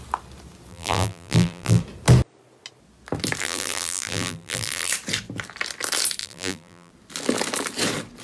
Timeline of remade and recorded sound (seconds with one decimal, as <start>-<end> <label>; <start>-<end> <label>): 0.0-0.7 recorded; 0.7-1.8 remade; 1.8-3.4 recorded; 3.4-4.9 remade; 4.9-6.2 recorded; 6.2-6.9 remade; 6.9-8.2 recorded

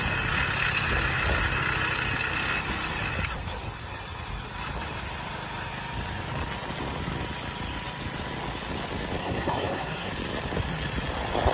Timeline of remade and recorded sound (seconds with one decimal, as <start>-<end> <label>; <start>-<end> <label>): 0.0-9.2 recorded; 9.2-10.1 remade; 10.1-11.5 recorded

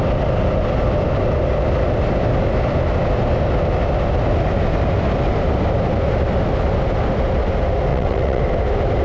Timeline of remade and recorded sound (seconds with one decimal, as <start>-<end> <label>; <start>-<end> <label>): 0.0-7.9 recorded; 7.9-8.4 remade; 8.4-9.0 recorded